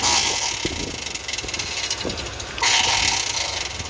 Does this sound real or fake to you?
real